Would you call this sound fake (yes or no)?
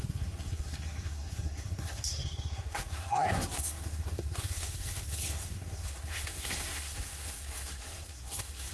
yes